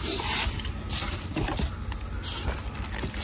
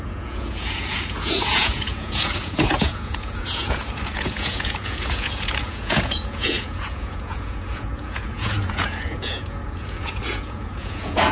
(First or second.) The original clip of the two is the first